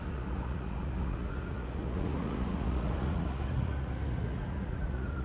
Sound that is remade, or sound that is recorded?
remade